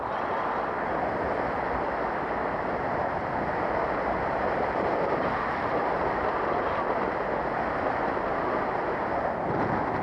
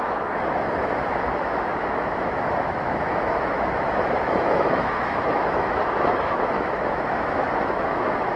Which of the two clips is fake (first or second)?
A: second